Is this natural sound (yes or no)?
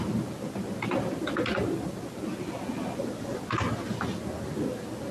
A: yes